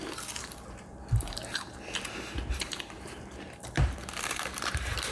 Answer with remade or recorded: remade